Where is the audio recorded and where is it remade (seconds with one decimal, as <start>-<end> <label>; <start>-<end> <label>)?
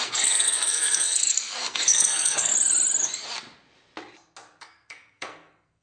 0.0-2.5 remade; 2.5-4.6 recorded; 4.6-5.8 remade